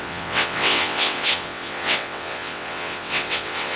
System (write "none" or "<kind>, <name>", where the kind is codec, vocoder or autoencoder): vocoder, WaveNeXt